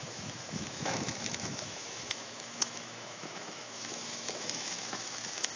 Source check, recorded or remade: remade